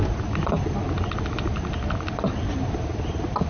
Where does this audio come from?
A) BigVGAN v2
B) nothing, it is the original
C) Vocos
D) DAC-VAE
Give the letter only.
B